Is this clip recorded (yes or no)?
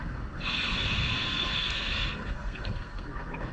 no